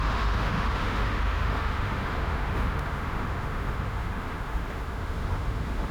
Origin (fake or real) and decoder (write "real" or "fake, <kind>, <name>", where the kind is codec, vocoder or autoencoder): fake, autoencoder, DAC-VAE